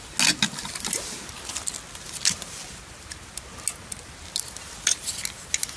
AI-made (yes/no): no